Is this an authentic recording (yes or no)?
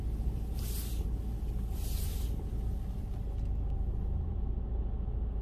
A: yes